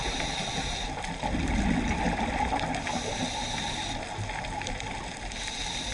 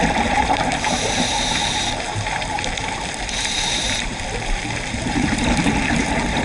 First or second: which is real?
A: first